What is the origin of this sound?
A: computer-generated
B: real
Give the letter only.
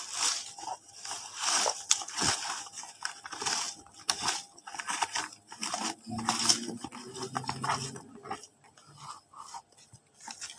B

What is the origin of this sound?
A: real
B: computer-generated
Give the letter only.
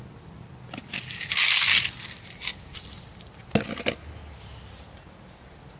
A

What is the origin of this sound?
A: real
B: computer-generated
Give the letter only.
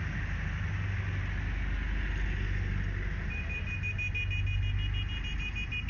A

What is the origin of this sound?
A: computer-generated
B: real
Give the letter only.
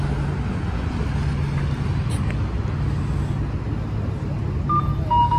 B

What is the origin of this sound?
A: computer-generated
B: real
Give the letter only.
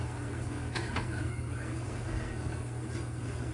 A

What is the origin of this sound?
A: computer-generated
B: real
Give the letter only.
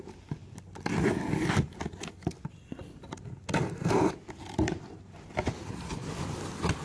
B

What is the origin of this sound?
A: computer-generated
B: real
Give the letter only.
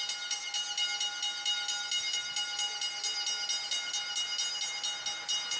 B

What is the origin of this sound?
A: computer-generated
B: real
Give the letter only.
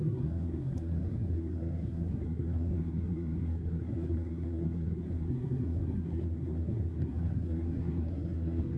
A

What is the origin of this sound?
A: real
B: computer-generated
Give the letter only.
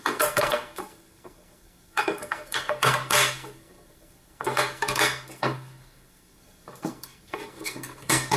B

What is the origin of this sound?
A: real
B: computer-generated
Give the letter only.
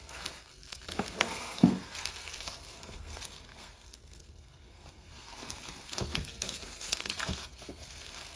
B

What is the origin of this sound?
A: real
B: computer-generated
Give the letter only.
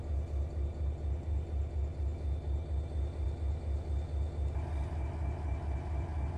A